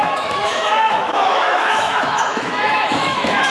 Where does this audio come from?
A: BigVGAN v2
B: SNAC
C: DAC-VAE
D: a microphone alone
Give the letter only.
C